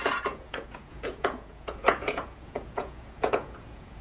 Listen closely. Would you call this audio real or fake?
fake